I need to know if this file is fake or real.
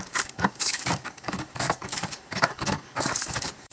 fake